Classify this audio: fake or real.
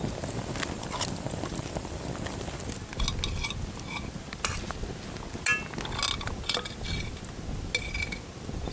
real